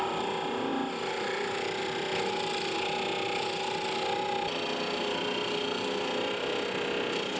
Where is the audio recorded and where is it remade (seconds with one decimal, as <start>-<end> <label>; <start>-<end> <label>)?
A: 0.0-7.4 recorded